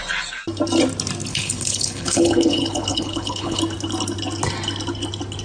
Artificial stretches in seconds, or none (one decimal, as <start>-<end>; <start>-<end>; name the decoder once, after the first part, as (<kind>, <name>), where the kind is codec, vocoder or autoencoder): 1.3-3.6 (codec, HILCodec)